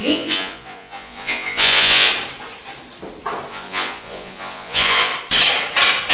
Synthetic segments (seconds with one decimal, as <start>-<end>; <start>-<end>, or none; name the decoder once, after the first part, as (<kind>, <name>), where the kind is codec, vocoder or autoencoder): 0.0-2.1 (vocoder, Vocos); 3.5-5.1